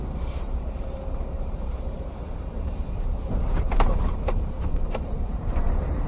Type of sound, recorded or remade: remade